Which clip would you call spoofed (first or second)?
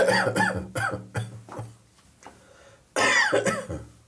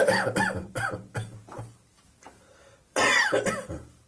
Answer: second